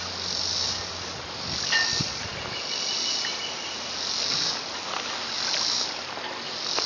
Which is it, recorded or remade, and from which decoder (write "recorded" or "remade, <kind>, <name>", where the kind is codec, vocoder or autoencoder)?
recorded